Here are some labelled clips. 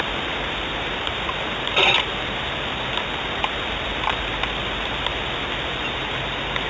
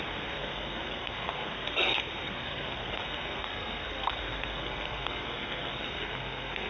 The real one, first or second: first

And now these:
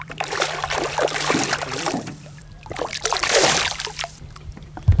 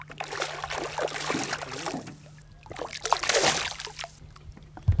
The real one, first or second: second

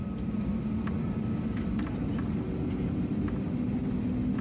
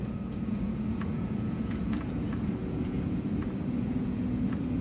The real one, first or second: first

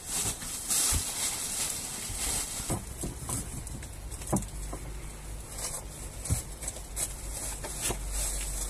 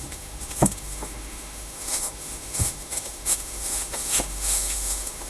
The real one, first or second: first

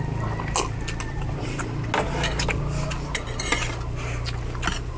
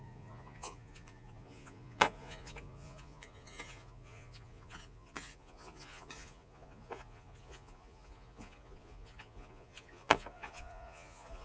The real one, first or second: first